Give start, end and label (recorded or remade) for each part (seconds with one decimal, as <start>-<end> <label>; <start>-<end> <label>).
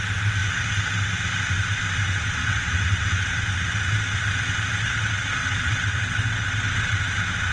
0.0-2.4 recorded; 2.4-3.4 remade; 3.4-5.4 recorded; 5.4-6.3 remade; 6.3-7.5 recorded